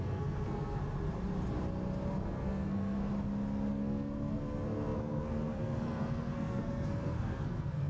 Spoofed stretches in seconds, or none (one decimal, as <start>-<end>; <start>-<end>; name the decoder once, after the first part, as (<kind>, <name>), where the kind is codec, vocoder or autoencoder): 0.0-0.8 (codec, SNAC); 2.1-3.1; 3.7-7.9